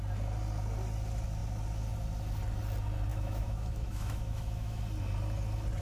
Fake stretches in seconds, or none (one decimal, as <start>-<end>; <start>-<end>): 3.1-4.8